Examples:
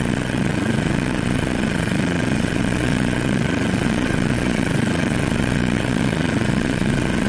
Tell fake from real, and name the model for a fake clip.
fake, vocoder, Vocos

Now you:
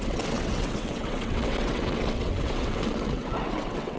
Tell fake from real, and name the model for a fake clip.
fake, vocoder, WaveNeXt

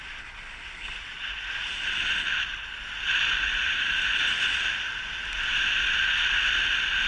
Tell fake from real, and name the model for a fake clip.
real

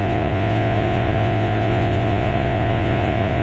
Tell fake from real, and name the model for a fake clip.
fake, vocoder, Vocos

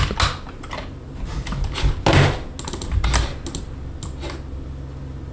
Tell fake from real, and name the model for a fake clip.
real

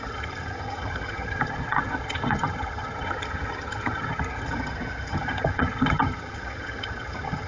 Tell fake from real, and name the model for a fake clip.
fake, vocoder, HiFi-GAN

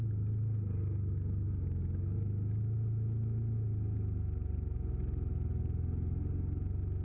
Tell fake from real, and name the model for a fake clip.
real